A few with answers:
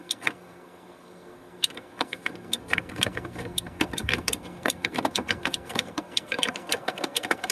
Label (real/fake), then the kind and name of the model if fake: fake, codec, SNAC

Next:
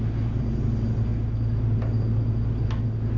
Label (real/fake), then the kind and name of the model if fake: real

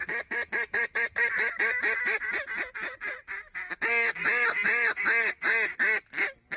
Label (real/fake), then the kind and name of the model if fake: real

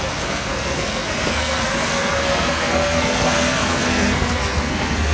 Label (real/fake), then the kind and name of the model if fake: fake, codec, SNAC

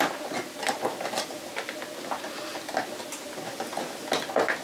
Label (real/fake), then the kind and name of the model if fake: real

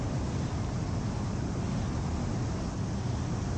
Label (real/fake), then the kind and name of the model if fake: real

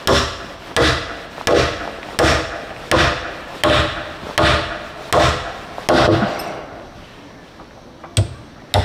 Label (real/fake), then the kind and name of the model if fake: real